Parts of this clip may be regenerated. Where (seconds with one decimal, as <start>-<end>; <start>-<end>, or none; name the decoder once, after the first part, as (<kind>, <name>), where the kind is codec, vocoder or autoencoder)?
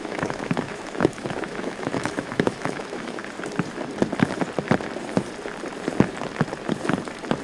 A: 0.0-3.2 (autoencoder, DAC-VAE)